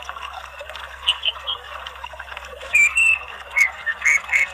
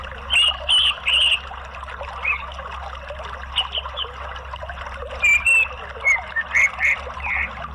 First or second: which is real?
second